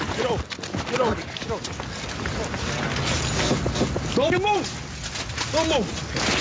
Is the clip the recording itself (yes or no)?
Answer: yes